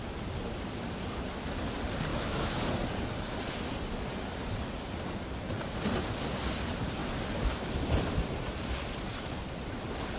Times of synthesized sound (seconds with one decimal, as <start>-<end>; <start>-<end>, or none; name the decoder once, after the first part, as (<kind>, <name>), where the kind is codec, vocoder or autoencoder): 2.1-2.6 (autoencoder, DAC-VAE)